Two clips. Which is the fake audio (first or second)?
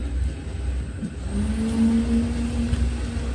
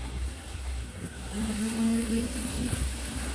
second